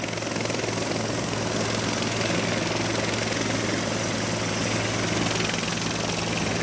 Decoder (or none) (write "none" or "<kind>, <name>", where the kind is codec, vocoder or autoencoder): none